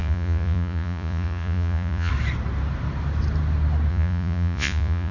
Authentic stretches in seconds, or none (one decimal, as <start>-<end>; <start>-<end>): 2.1-3.9